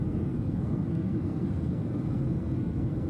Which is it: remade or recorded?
remade